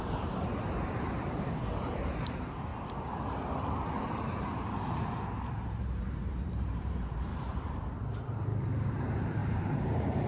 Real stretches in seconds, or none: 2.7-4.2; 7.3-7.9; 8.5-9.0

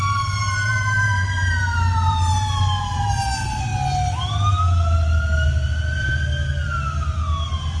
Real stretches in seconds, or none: 3.7-7.8